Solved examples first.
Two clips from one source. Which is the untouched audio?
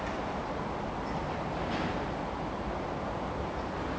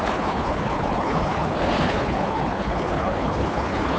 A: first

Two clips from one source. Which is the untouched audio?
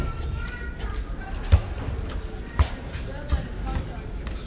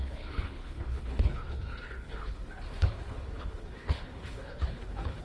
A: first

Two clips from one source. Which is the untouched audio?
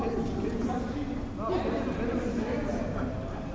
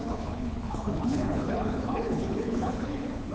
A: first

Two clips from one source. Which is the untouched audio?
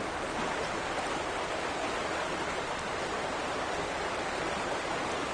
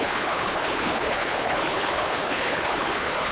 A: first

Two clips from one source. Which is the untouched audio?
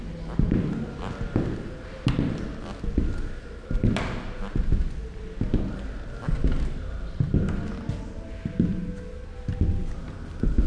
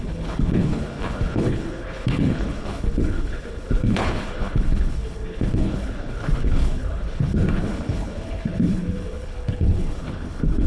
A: first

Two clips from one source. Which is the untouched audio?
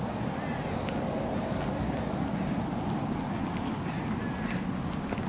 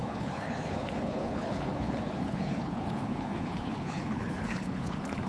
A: first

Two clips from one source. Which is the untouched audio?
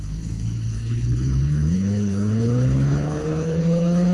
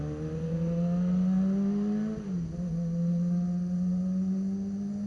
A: second